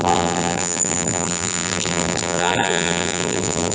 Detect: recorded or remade remade